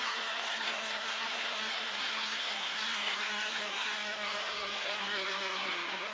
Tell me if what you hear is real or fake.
fake